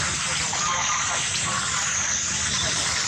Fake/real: real